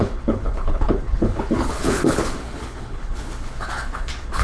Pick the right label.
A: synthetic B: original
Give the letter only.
A